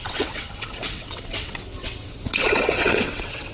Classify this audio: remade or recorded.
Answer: remade